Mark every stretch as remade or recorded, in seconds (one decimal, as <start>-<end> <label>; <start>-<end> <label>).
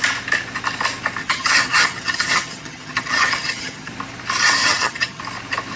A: 0.0-1.2 recorded; 1.2-3.9 remade; 3.9-4.6 recorded; 4.6-5.2 remade; 5.2-5.8 recorded